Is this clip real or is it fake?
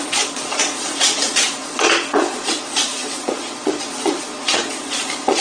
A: fake